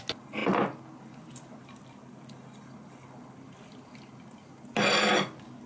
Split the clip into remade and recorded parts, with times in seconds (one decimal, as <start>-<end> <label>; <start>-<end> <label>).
0.0-5.7 recorded

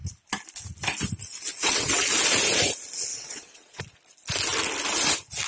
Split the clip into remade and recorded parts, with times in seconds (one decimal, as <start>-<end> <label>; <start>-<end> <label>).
0.0-1.5 recorded; 1.5-2.1 remade; 2.1-3.1 recorded; 3.1-3.8 remade; 3.8-5.5 recorded

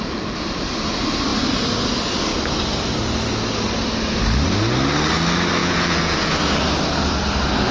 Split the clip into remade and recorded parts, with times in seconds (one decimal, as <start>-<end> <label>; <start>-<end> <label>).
0.0-5.6 recorded; 5.6-6.4 remade; 6.4-7.7 recorded

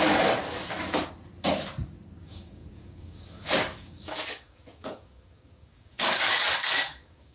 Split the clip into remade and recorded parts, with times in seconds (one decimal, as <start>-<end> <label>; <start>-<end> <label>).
0.0-0.4 remade; 0.4-2.2 recorded; 2.2-7.3 remade

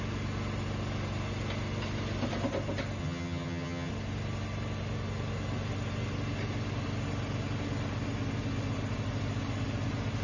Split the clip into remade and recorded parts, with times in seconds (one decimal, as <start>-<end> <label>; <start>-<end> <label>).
0.0-3.0 recorded; 3.0-3.9 remade; 3.9-10.2 recorded

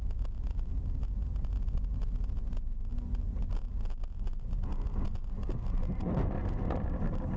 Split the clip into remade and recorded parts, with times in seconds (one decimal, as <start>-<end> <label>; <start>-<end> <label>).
0.0-7.4 recorded

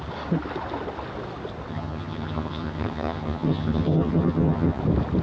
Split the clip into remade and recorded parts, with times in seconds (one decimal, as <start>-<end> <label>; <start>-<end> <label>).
0.0-1.7 recorded; 1.7-4.8 remade; 4.8-5.2 recorded

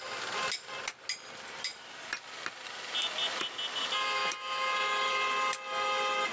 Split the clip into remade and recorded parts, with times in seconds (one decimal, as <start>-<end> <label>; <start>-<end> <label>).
0.0-6.3 recorded